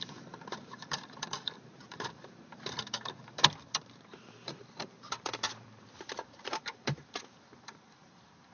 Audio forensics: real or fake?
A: fake